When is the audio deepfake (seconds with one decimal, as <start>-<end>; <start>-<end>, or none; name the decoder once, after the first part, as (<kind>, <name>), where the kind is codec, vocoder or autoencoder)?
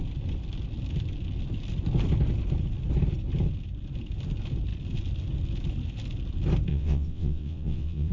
6.7-8.1 (vocoder, WaveNeXt)